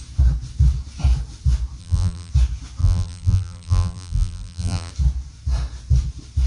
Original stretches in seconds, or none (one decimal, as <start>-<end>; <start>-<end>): 0.0-1.8; 2.3-2.8; 4.9-6.5

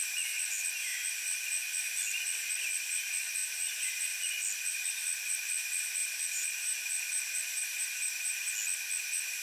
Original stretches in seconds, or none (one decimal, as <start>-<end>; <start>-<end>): 0.0-3.4; 4.0-6.0; 8.5-9.4

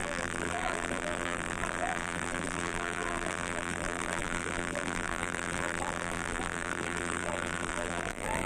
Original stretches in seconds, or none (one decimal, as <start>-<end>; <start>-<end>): none

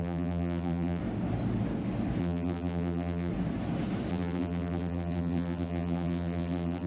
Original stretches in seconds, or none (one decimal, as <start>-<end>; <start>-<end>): 1.0-2.2; 3.3-4.1

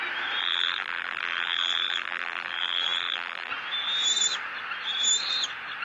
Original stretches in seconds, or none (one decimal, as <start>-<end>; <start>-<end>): 0.0-0.4; 3.5-5.8

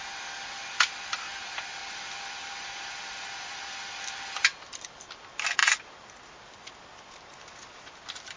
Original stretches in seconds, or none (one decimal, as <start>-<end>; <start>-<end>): 0.0-1.8; 5.0-8.4

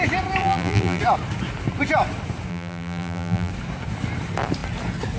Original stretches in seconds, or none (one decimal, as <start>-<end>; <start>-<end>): 0.0-0.4; 1.0-2.5; 3.5-5.2